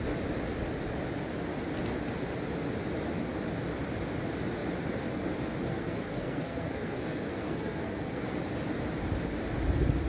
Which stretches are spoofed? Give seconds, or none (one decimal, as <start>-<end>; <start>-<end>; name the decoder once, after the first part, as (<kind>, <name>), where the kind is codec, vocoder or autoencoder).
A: 5.7-8.4 (codec, SNAC)

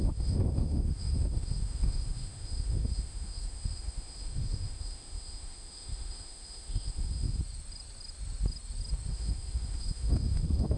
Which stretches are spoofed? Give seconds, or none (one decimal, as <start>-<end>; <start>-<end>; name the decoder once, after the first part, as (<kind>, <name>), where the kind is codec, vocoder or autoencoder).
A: 0.0-7.4 (autoencoder, DAC-VAE); 9.1-10.8

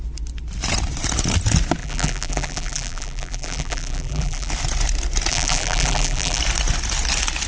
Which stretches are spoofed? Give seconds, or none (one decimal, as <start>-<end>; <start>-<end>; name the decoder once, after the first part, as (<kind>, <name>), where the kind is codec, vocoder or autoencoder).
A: 1.8-4.5 (vocoder, BigVGAN v2); 5.3-6.4

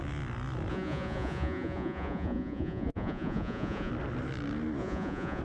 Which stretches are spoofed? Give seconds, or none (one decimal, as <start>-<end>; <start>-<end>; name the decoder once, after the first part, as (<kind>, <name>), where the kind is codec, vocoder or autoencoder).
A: 0.7-3.9 (vocoder, Vocos); 4.8-5.4

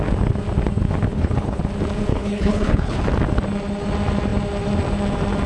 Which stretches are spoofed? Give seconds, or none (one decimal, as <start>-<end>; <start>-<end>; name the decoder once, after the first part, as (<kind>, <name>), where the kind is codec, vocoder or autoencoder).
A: 1.1-1.6 (codec, HILCodec); 2.1-3.0

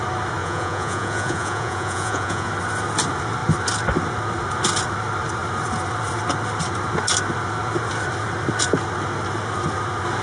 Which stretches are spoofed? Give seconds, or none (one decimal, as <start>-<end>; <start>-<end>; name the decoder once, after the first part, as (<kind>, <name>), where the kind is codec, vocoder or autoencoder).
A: 0.4-2.5 (vocoder, Vocos)